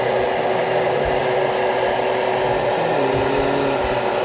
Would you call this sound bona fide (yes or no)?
yes